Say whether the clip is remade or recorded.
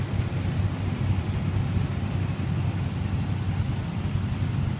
recorded